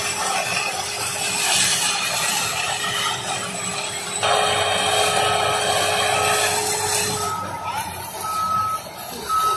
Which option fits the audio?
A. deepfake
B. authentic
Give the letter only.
B